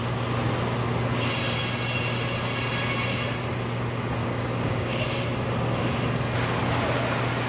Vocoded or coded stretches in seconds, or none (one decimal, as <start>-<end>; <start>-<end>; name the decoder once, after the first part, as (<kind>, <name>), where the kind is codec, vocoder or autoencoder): 4.2-5.2 (codec, DAC)

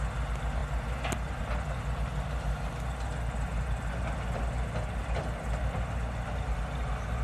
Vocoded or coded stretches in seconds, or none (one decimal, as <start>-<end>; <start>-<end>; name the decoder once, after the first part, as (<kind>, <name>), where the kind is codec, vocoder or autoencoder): none

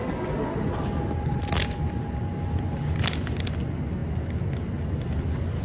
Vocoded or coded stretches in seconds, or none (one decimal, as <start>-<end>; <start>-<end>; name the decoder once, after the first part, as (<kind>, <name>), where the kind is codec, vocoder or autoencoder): none

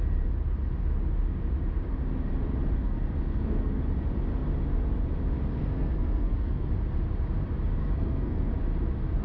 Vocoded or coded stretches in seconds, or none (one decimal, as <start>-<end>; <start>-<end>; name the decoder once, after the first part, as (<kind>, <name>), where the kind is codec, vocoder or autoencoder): 2.8-3.8 (codec, SNAC); 5.5-6.7; 7.8-8.5

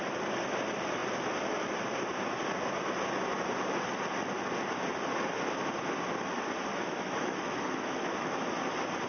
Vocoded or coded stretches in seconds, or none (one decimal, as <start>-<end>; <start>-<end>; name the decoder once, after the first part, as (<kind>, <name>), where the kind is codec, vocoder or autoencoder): 6.7-8.5 (autoencoder, DAC-VAE)